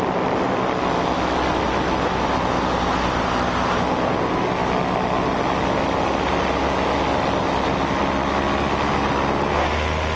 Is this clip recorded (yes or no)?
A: yes